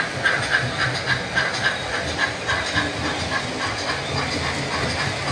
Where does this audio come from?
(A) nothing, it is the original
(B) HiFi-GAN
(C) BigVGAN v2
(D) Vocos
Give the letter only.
A